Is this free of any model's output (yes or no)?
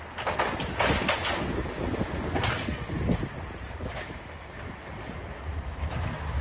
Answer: yes